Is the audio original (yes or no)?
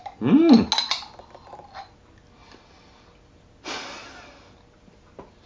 yes